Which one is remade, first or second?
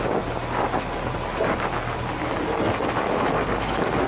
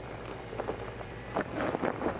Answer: second